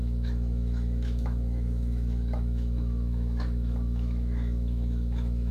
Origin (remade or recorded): remade